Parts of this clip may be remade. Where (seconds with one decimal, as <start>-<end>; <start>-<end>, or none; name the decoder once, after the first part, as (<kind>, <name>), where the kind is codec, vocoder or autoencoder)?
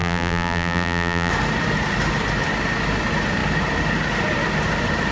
0.0-1.3 (vocoder, BigVGAN v2)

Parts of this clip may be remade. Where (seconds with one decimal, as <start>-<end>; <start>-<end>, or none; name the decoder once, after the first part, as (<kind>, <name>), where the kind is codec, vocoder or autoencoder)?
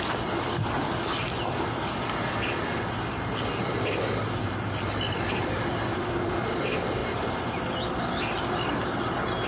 4.4-5.4 (vocoder, BigVGAN v2)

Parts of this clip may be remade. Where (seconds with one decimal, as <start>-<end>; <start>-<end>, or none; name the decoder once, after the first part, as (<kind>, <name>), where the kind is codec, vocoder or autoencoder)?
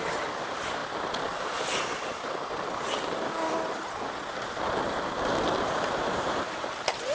0.0-0.8 (vocoder, BigVGAN v2); 5.1-7.1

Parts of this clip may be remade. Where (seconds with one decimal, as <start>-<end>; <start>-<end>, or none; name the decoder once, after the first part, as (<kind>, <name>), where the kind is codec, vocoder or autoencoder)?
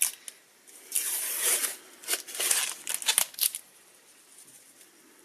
none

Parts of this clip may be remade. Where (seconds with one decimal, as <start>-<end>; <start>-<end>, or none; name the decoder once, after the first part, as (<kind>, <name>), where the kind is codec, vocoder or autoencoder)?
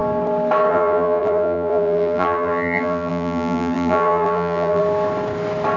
0.7-4.8 (vocoder, BigVGAN v2)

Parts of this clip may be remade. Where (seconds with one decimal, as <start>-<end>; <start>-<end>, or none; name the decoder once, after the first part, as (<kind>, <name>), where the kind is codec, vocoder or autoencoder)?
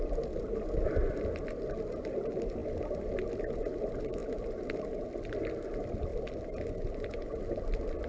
2.6-3.4 (vocoder, BigVGAN v2); 6.1-7.4